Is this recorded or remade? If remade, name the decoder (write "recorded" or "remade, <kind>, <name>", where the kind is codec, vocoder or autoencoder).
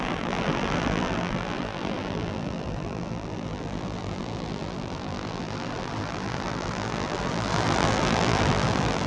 remade, vocoder, BigVGAN v2